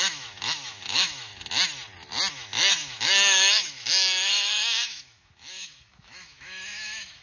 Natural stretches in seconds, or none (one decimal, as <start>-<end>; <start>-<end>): 1.3-2.3